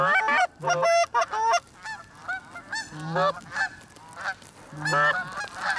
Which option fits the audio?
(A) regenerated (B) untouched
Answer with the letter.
B